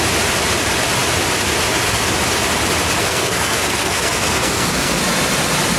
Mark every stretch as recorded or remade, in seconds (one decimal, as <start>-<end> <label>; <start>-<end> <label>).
0.0-3.0 recorded; 3.0-5.0 remade; 5.0-5.8 recorded